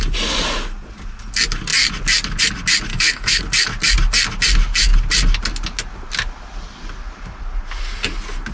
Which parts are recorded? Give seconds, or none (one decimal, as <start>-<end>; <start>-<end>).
0.0-2.9; 3.4-8.5